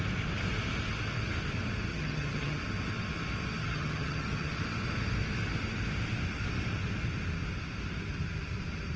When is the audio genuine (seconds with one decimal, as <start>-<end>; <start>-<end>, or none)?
0.0-1.9; 2.6-3.6; 4.5-9.0